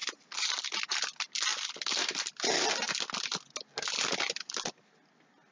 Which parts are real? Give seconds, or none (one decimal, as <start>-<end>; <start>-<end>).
0.0-5.5